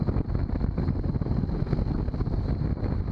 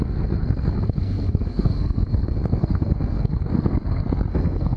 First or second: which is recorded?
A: first